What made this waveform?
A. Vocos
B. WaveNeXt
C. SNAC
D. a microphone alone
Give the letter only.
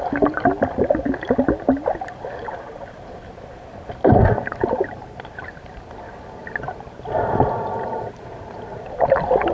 D